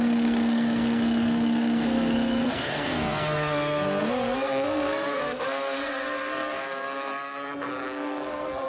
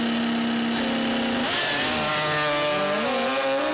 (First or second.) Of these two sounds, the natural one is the second